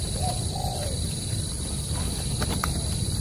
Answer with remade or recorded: remade